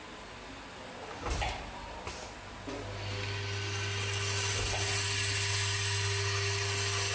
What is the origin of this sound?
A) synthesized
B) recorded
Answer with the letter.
B